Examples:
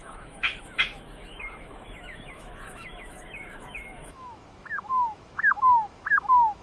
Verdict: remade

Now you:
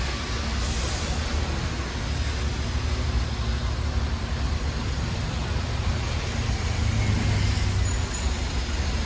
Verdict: recorded